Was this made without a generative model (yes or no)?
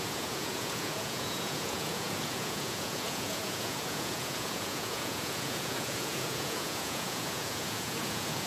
no